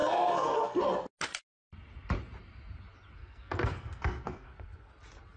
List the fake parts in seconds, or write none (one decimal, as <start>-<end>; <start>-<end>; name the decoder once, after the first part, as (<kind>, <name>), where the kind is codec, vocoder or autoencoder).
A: 0.0-0.8 (codec, SNAC); 3.2-4.9